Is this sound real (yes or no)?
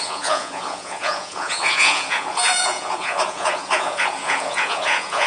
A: no